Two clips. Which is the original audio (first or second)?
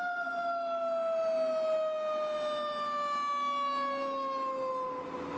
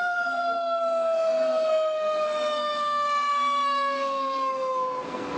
first